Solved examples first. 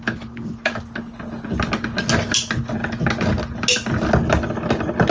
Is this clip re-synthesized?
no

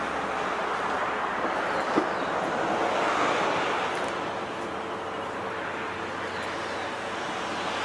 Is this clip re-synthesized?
no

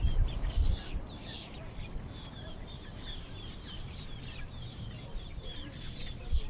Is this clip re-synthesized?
yes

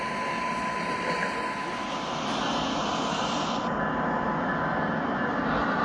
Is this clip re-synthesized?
no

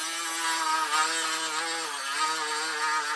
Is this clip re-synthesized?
no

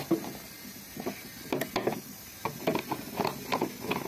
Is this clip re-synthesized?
no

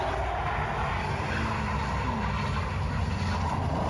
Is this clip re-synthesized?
no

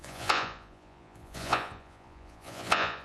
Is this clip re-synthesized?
yes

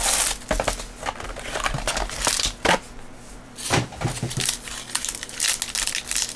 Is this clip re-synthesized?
no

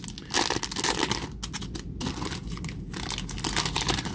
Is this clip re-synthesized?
no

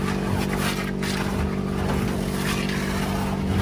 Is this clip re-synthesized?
no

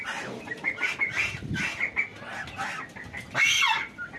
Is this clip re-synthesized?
no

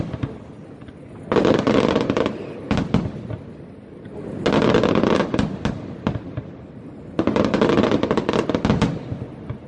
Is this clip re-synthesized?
no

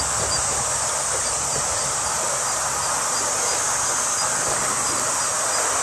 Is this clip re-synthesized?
no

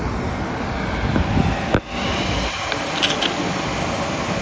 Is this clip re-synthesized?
no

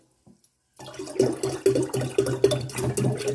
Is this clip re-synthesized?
no